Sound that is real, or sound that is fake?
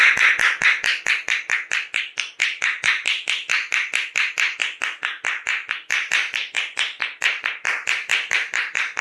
real